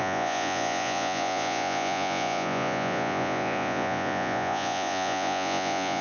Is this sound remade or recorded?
remade